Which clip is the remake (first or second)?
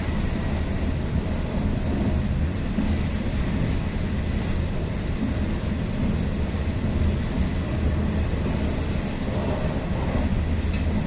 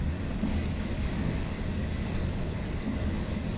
second